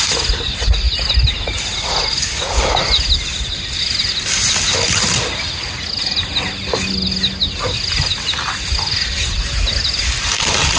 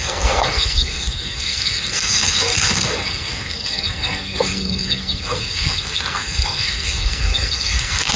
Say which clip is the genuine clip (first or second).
first